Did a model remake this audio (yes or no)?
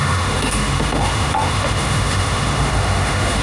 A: yes